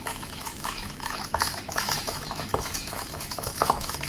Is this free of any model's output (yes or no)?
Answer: no